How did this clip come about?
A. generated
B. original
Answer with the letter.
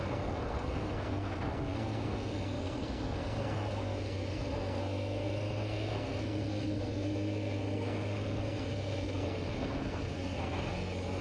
A